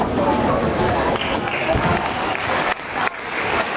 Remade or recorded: remade